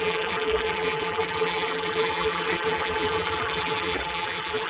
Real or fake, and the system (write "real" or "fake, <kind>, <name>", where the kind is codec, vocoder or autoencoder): fake, vocoder, BigVGAN v2